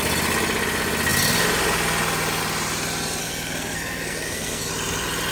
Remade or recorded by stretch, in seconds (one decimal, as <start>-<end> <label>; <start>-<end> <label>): 0.0-3.2 recorded; 3.2-4.7 remade; 4.7-5.3 recorded